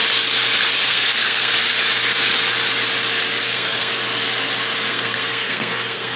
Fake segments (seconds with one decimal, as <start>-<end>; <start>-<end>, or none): 0.8-1.5; 3.4-3.9; 4.9-6.2